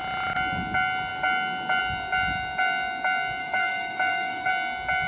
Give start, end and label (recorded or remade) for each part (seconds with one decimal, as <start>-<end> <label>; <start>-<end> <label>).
0.0-3.4 recorded; 3.4-4.5 remade; 4.5-5.1 recorded